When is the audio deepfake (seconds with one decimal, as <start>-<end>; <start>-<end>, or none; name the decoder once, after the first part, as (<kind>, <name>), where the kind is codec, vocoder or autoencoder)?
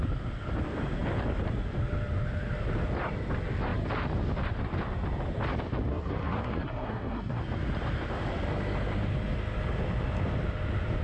5.9-7.4 (codec, SNAC)